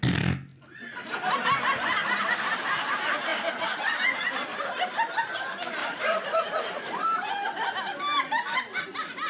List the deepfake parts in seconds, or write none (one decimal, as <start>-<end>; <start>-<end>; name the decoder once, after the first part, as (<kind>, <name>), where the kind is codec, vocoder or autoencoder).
5.8-7.0 (vocoder, Vocos)